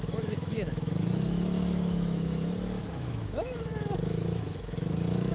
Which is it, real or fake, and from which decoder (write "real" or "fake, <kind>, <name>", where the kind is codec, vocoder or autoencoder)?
fake, autoencoder, DAC-VAE